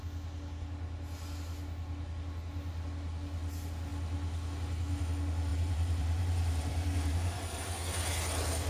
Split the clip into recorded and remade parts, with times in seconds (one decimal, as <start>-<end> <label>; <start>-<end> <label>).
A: 0.0-5.5 recorded; 5.5-7.6 remade; 7.6-8.7 recorded